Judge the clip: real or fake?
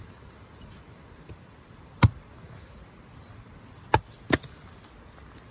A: real